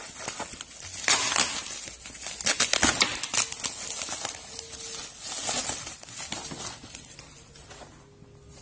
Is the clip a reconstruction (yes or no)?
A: no